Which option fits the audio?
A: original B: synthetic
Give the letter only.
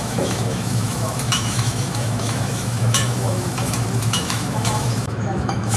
B